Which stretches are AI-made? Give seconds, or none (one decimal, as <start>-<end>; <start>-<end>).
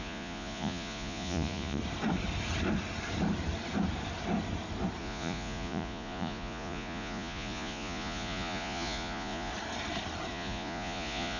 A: 0.0-1.8; 5.0-9.5; 10.3-11.4